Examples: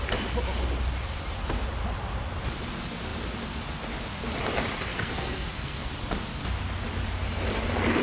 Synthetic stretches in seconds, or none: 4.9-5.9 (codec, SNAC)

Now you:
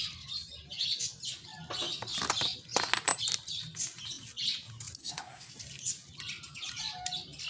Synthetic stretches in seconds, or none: 5.0-5.5 (codec, SNAC)

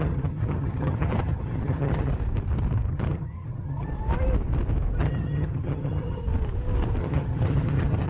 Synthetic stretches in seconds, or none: 0.0-2.1 (vocoder, HiFi-GAN); 2.9-3.9; 5.0-6.2; 7.0-8.1

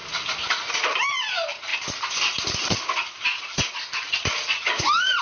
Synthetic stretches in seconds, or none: none

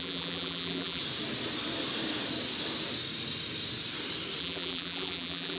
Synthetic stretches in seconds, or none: 0.0-1.0 (vocoder, BigVGAN v2); 4.4-5.6

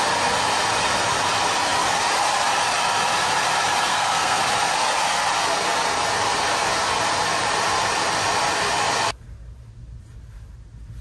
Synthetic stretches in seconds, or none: 3.9-4.4 (codec, SNAC)

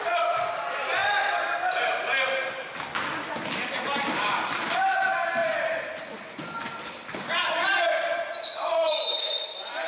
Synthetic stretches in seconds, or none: 0.0-1.0 (vocoder, BigVGAN v2); 4.0-9.9